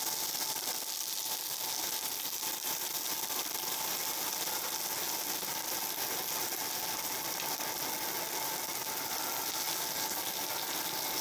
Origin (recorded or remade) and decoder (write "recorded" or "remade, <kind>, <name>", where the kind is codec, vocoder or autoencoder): recorded